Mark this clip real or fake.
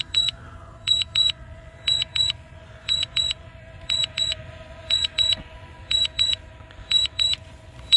fake